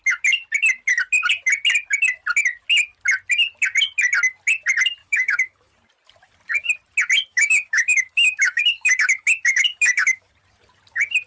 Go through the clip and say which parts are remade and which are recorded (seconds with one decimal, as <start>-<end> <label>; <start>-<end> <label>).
0.0-5.0 recorded; 5.0-5.7 remade; 5.7-7.3 recorded; 7.3-10.3 remade; 10.3-11.3 recorded